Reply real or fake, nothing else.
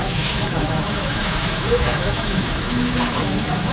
fake